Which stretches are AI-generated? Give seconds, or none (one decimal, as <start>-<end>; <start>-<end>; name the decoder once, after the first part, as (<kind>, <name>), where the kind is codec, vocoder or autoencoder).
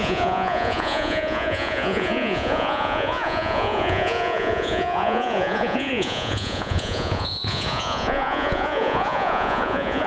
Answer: 0.0-10.1 (vocoder, Vocos)